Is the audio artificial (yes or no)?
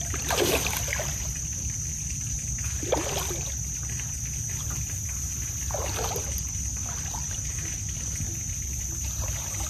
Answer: no